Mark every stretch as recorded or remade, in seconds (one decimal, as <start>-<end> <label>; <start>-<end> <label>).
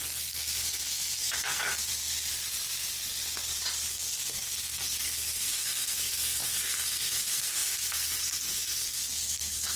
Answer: 0.0-1.9 remade; 1.9-3.9 recorded; 3.9-9.8 remade